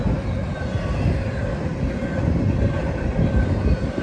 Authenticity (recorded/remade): recorded